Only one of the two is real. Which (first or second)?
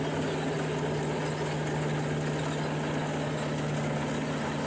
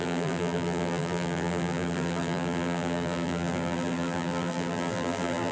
first